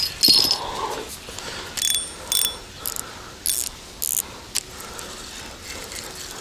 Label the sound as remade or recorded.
recorded